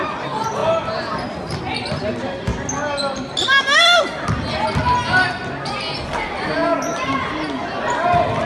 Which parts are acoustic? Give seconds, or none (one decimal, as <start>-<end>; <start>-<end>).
0.0-8.5